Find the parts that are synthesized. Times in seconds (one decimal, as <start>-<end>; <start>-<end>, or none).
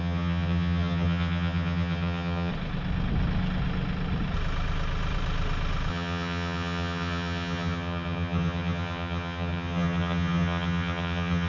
0.0-2.5; 5.9-11.5